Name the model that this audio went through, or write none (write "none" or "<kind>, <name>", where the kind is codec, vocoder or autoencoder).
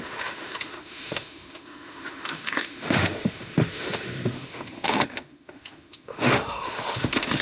autoencoder, DAC-VAE